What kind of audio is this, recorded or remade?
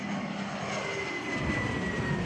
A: recorded